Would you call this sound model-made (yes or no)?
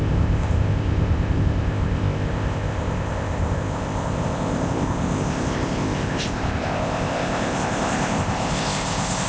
yes